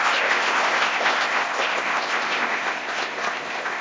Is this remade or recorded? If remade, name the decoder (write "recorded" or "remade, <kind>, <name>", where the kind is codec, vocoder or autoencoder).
remade, codec, ZipCodec